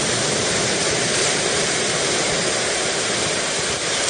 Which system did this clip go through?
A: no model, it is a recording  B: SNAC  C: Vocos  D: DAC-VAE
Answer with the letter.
A